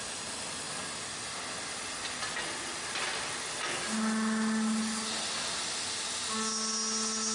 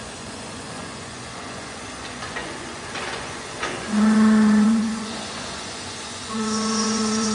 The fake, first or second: second